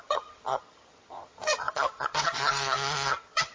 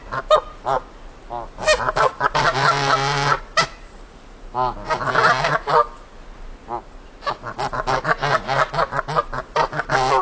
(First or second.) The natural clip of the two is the second